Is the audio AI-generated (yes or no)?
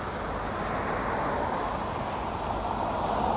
no